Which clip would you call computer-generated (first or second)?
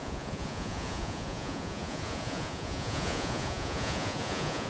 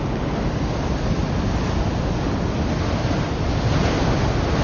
first